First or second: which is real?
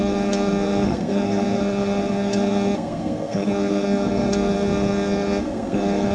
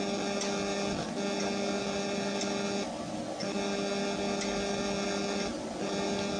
second